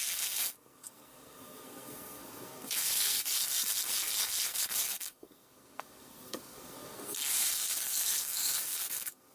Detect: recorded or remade remade